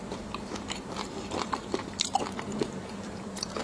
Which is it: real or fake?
fake